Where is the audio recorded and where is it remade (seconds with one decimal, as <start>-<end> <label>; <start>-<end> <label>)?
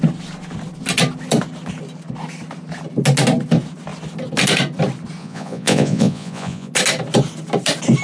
0.0-5.2 recorded; 5.2-6.7 remade; 6.7-8.0 recorded